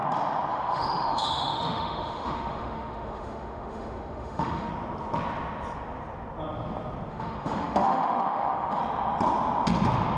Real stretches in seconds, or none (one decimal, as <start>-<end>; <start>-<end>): 0.0-0.5; 4.7-7.1; 8.8-10.2

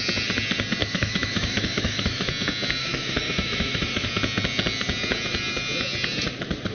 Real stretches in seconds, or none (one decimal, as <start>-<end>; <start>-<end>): 0.0-0.8; 2.3-2.8; 4.1-6.7